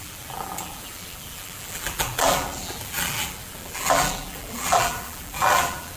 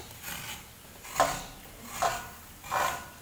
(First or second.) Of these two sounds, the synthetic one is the first